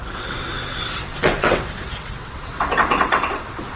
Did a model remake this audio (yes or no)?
yes